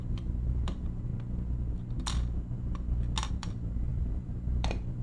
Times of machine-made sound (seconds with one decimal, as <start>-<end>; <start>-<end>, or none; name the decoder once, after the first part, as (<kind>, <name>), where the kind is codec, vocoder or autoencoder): 0.0-1.1 (vocoder, BigVGAN v2); 3.3-5.0